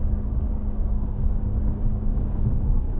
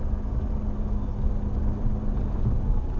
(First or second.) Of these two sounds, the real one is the second